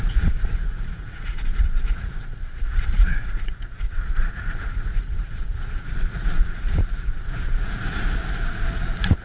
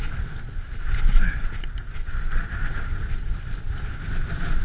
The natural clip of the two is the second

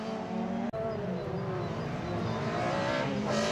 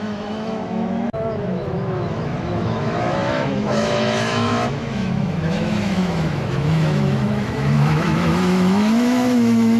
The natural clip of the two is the first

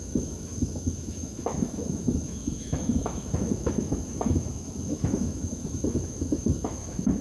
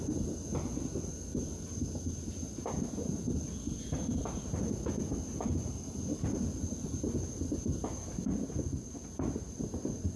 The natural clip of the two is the second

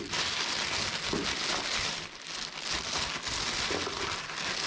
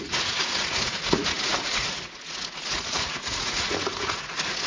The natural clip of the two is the first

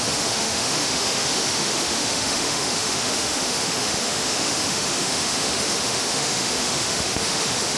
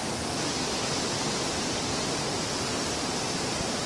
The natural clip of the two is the second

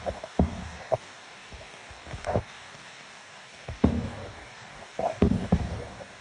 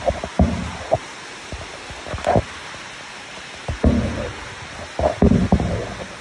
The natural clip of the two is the second